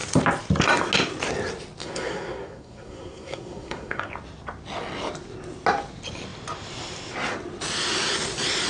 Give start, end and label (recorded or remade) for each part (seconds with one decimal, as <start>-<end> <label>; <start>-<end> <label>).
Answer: 0.0-1.8 recorded; 1.8-4.1 remade; 4.1-8.7 recorded

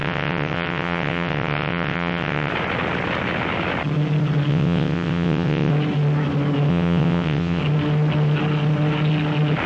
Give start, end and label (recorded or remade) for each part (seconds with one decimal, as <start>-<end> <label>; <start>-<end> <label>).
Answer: 0.0-2.5 remade; 2.5-4.5 recorded; 4.5-5.7 remade; 5.7-6.7 recorded; 6.7-7.6 remade; 7.6-9.7 recorded